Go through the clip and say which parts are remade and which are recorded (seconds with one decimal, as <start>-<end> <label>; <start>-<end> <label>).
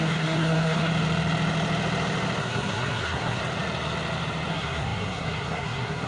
0.0-0.9 remade; 0.9-2.4 recorded; 2.4-3.4 remade; 3.4-4.5 recorded; 4.5-6.1 remade